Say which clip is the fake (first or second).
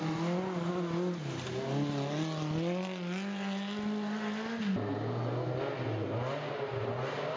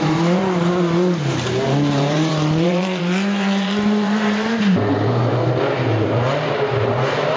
second